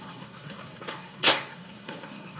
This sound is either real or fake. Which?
fake